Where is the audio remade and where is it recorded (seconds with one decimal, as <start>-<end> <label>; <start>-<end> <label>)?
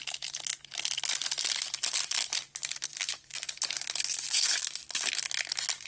0.0-2.9 recorded; 2.9-5.1 remade; 5.1-5.9 recorded